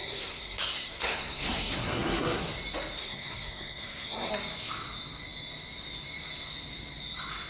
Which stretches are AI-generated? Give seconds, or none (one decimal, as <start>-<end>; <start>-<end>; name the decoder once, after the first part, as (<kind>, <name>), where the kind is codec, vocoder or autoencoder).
0.0-2.5 (codec, SNAC); 3.0-4.3

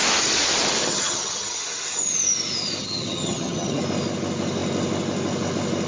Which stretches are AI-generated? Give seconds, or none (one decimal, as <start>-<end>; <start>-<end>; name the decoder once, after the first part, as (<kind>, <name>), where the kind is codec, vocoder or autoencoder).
0.8-1.6 (vocoder, HiFi-GAN); 2.8-3.8

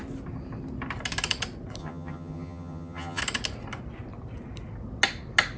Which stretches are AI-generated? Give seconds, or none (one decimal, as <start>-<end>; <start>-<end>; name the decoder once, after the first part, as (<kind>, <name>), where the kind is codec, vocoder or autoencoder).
1.8-3.2 (vocoder, HiFi-GAN)

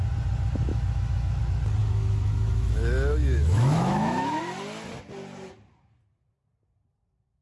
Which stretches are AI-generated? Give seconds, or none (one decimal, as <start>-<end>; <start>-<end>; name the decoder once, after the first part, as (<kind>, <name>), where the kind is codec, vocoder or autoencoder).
0.7-1.4 (autoencoder, DAC-VAE); 1.8-4.4